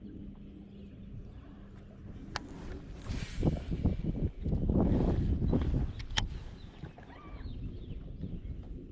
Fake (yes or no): no